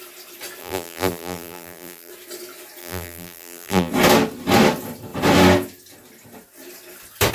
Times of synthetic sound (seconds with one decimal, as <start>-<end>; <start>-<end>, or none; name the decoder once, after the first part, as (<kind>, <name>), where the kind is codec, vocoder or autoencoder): 0.6-2.1 (vocoder, BigVGAN v2); 2.8-3.9